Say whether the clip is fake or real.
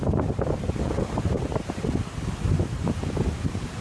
real